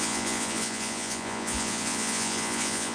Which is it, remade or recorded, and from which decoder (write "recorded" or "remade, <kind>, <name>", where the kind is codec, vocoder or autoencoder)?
remade, vocoder, Vocos